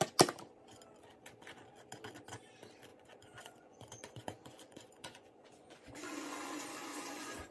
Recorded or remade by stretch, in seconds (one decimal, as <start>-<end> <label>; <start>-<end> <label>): 0.0-2.9 recorded; 2.9-7.5 remade